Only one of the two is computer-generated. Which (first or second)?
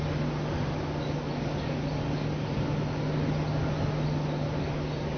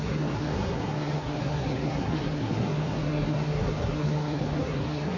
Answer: second